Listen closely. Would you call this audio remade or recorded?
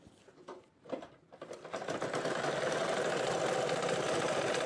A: recorded